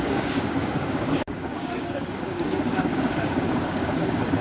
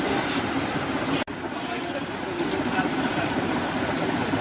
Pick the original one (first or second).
second